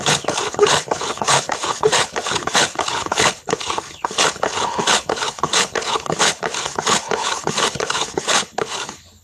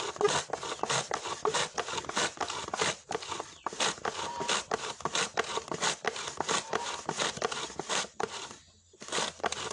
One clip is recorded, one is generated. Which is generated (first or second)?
first